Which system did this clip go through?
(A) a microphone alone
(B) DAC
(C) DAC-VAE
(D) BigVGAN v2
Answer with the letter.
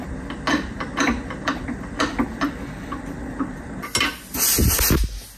A